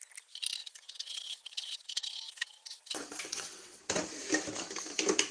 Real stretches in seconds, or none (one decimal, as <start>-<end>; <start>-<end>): 0.0-0.6; 3.8-5.3